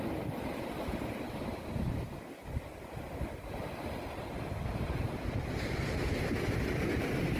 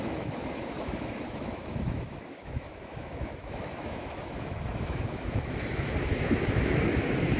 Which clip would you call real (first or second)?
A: first